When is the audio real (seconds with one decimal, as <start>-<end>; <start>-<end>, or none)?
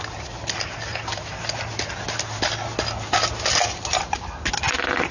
0.0-5.1